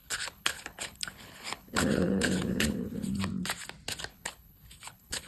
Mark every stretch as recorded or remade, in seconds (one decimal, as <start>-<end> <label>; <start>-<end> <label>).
0.0-3.2 remade; 3.2-4.1 recorded; 4.1-5.3 remade